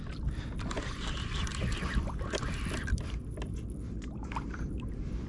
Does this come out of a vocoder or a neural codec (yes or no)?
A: no